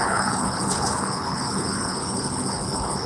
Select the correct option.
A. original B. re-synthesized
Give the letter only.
B